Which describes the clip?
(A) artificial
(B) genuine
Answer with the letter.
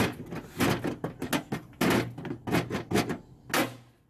B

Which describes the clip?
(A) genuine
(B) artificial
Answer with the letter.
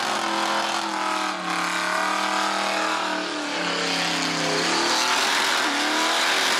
A